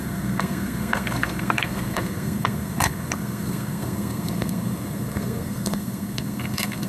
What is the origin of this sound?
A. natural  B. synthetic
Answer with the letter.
B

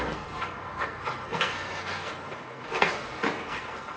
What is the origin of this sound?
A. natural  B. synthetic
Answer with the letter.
B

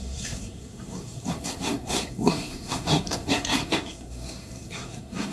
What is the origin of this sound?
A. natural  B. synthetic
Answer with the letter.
B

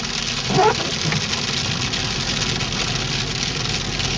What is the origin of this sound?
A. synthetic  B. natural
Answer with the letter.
B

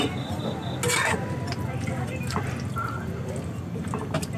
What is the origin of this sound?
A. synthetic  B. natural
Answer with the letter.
B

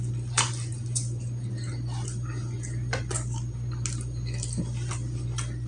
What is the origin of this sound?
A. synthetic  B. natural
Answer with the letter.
B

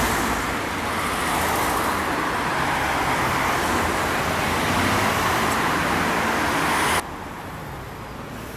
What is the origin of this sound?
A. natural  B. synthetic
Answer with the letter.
A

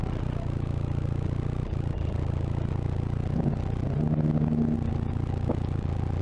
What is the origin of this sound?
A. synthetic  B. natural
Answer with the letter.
B